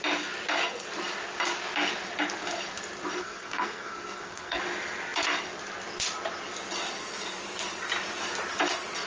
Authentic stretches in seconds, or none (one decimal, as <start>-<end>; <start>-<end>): 0.0-3.2; 4.6-9.1